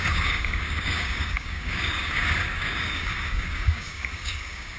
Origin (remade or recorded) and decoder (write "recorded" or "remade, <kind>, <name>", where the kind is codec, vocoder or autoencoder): remade, codec, DAC